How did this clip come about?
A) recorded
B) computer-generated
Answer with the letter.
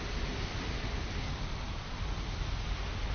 A